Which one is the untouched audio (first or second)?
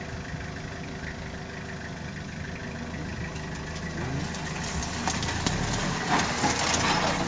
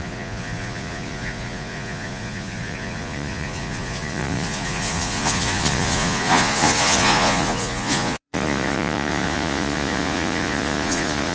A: first